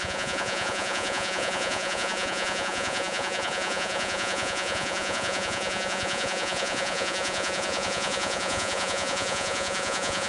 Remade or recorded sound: remade